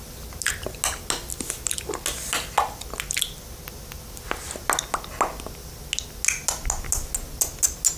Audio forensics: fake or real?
real